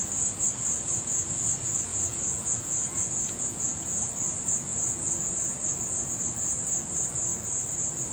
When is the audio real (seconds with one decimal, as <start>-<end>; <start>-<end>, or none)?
0.0-1.9; 4.1-4.7; 5.3-8.1